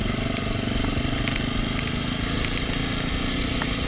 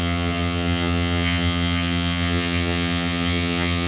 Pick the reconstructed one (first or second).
second